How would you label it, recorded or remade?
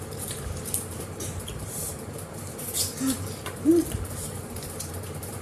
remade